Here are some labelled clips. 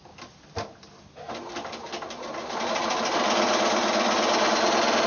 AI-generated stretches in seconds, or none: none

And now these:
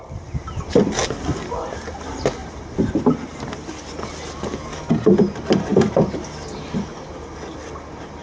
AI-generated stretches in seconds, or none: none

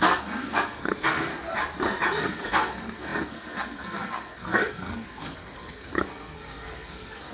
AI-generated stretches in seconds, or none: 0.0-1.3 (codec, SNAC); 2.2-7.3

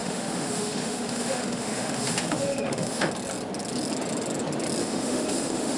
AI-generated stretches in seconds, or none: 0.0-3.1 (autoencoder, DAC-VAE); 4.8-5.8